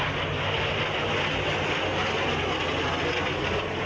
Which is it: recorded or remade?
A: recorded